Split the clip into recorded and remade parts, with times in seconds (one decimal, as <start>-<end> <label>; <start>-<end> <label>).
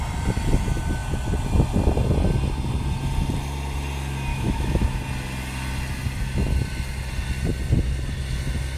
0.0-4.3 recorded; 4.3-5.0 remade; 5.0-8.8 recorded